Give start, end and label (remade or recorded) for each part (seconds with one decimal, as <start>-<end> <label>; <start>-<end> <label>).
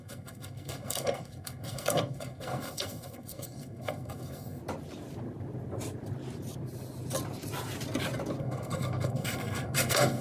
0.0-4.6 remade; 4.6-8.4 recorded; 8.4-10.2 remade